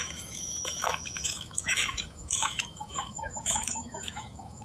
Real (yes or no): no